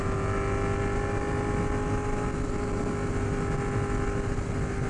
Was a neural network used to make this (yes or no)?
no